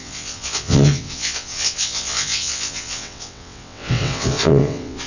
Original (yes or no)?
no